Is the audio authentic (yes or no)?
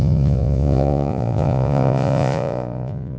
no